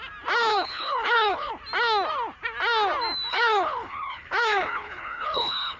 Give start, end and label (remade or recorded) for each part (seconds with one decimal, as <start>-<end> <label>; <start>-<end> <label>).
0.0-0.5 recorded; 0.5-1.5 remade; 1.5-3.3 recorded; 3.3-5.8 remade